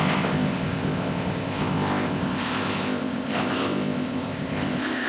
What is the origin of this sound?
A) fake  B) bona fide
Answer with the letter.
A